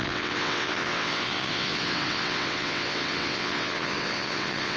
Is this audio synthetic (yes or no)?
yes